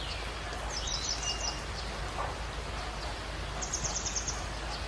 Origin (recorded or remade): recorded